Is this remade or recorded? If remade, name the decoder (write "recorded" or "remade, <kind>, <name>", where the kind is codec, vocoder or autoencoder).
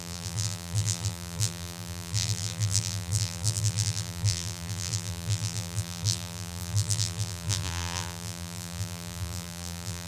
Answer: remade, vocoder, BigVGAN v2